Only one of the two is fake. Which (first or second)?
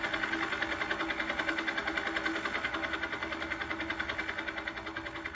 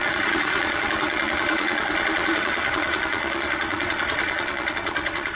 second